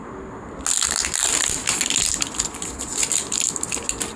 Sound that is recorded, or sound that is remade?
recorded